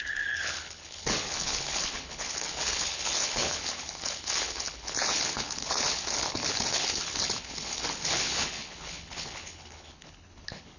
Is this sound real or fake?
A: fake